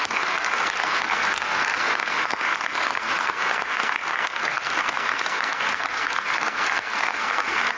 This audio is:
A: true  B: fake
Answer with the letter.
B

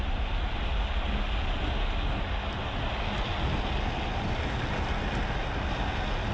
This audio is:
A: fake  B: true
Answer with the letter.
B